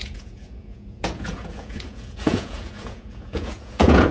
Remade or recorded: remade